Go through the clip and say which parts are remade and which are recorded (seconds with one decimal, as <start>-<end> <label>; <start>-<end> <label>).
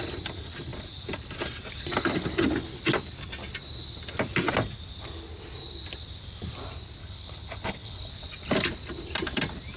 0.0-7.0 recorded; 7.0-8.1 remade; 8.1-9.8 recorded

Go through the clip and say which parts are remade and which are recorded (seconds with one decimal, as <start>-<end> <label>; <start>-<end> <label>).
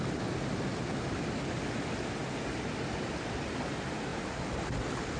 0.0-5.2 recorded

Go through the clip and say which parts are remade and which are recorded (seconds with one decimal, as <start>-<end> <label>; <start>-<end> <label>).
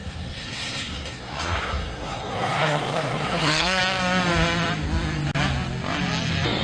0.0-3.8 remade; 3.8-6.6 recorded